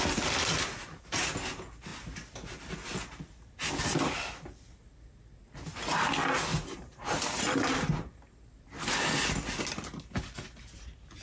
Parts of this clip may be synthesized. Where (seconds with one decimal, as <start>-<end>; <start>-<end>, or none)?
6.5-8.2